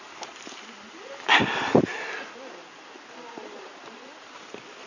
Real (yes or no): yes